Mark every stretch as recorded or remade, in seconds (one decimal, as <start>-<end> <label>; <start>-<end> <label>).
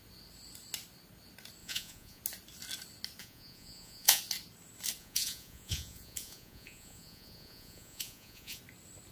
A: 0.0-1.6 recorded; 1.6-2.2 remade; 2.2-3.2 recorded; 3.2-4.2 remade; 4.2-5.0 recorded; 5.0-8.6 remade; 8.6-9.1 recorded